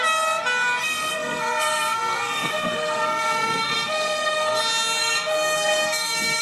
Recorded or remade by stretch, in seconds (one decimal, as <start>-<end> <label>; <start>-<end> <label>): 0.0-0.8 recorded; 0.8-4.6 remade; 4.6-5.0 recorded; 5.0-6.4 remade